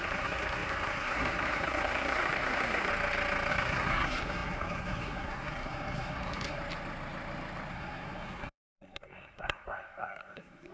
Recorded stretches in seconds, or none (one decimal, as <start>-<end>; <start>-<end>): 2.9-3.5; 6.6-7.7